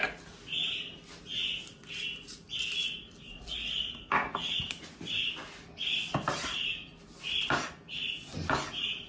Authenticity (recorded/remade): recorded